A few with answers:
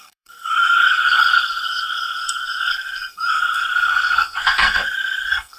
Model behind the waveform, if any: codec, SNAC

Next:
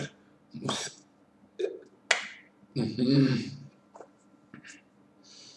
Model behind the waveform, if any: none